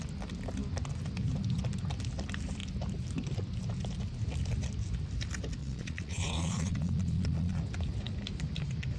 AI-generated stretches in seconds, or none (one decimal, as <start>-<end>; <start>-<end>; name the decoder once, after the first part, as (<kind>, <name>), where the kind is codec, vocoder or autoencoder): 5.6-7.6 (vocoder, Vocos)

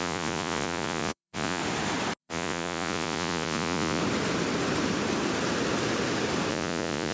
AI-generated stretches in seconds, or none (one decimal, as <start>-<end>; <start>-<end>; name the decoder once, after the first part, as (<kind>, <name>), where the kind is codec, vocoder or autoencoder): 0.0-1.6 (vocoder, Vocos); 2.2-4.0; 6.5-7.1

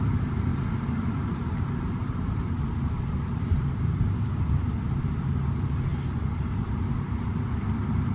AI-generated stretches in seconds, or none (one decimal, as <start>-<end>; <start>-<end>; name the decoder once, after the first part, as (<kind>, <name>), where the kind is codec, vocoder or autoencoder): none

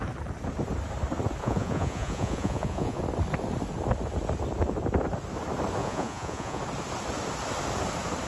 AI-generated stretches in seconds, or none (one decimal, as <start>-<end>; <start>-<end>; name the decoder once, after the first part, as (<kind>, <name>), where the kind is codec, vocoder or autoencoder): 1.4-3.0 (vocoder, Vocos); 5.8-6.6

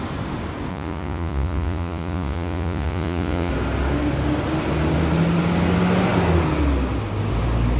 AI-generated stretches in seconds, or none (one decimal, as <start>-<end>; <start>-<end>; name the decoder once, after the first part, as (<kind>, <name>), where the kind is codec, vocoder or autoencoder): 0.7-3.5 (vocoder, Vocos)

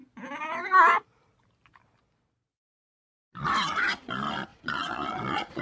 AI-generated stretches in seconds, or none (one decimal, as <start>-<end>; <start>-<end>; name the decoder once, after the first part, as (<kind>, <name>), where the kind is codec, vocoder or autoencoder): 4.5-5.6 (vocoder, Vocos)

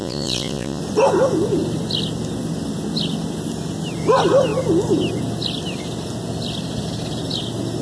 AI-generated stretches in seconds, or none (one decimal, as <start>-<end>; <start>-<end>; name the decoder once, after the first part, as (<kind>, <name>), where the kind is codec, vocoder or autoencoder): 0.0-0.8 (vocoder, Vocos)

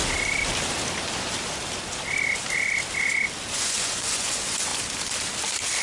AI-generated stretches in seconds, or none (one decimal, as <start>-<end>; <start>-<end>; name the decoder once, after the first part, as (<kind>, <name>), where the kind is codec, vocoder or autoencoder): 3.5-4.7 (vocoder, Vocos)